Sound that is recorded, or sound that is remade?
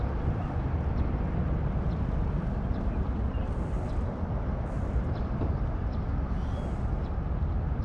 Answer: remade